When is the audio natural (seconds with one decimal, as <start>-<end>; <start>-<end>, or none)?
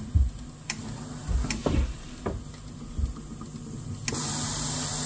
0.0-5.1